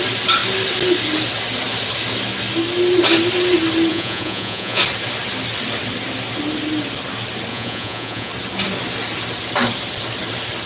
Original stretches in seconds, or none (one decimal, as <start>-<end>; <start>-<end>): 0.0-3.9; 4.8-7.5; 8.3-10.7